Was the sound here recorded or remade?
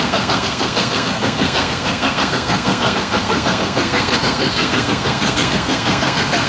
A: remade